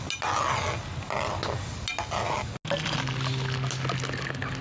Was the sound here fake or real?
real